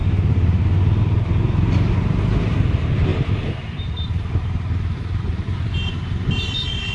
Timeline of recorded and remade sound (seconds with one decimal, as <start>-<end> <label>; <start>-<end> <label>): 0.0-3.1 recorded; 3.1-6.3 remade; 6.3-6.9 recorded